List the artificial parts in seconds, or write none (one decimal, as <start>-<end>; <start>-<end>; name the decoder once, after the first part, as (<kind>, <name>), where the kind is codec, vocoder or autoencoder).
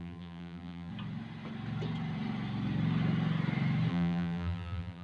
0.0-0.9 (vocoder, BigVGAN v2); 3.9-5.0